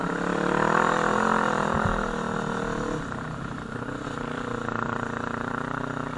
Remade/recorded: recorded